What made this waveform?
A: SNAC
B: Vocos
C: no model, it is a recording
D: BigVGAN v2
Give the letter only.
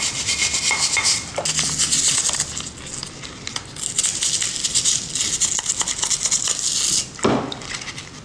C